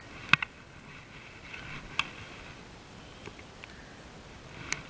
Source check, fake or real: real